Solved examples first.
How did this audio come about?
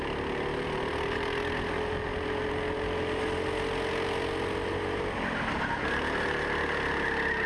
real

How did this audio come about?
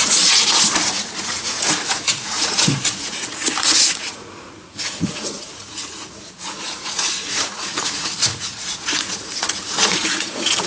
fake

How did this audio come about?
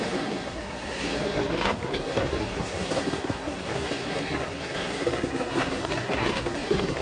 fake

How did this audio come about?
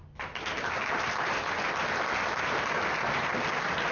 real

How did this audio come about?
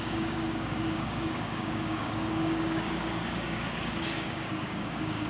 fake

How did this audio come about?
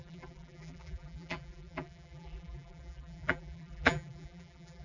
fake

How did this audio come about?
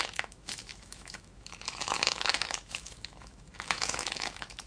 fake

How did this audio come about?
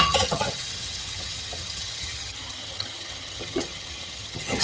fake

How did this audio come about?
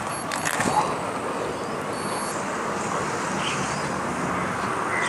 real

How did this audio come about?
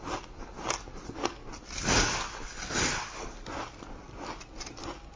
real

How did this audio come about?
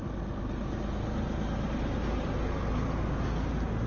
real